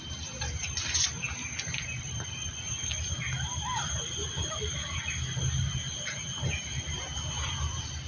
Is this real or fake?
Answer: real